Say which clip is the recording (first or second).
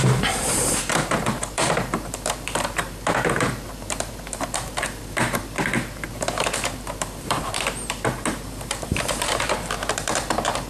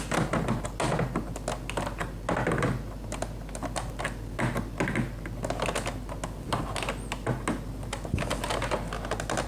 second